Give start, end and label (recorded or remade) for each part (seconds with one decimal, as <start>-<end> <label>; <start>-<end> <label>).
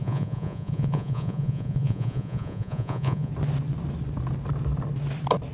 0.0-3.3 remade; 3.3-5.5 recorded